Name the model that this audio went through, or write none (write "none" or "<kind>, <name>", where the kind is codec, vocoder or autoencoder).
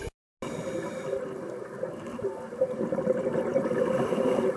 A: none